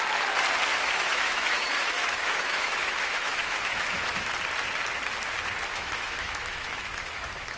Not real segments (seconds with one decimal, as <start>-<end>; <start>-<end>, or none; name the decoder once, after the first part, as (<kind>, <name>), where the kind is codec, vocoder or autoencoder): 0.7-4.3 (autoencoder, DAC-VAE); 5.7-7.6